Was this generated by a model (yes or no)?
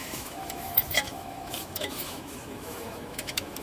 yes